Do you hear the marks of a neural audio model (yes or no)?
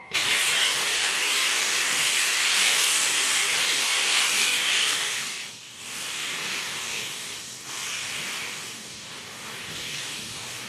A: yes